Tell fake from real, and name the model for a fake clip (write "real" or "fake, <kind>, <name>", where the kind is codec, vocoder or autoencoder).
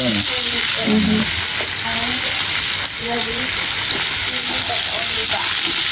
real